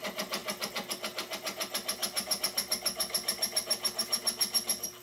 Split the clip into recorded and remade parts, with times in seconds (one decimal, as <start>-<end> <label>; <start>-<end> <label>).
0.0-5.0 recorded

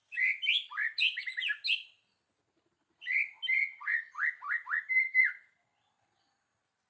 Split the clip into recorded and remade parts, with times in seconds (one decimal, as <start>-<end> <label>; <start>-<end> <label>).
0.0-3.6 recorded; 3.6-4.2 remade; 4.2-6.9 recorded

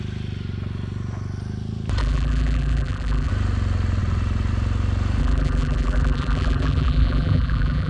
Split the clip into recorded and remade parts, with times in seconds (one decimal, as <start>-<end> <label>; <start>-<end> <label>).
0.0-2.0 recorded; 2.0-3.3 remade; 3.3-5.2 recorded; 5.2-7.9 remade

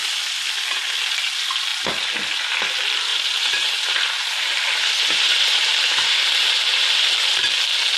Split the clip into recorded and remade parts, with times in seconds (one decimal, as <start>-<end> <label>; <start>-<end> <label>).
0.0-3.1 recorded; 3.1-7.4 remade; 7.4-8.0 recorded